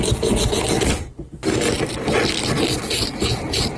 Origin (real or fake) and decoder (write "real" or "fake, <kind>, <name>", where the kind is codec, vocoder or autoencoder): real